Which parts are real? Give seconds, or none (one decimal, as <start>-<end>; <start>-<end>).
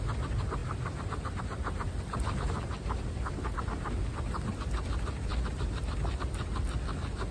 0.0-7.3